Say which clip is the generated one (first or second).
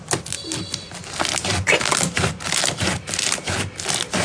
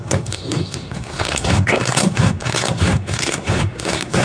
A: second